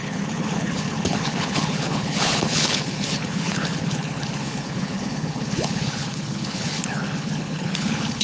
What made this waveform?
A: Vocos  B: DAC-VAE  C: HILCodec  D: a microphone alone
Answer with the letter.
C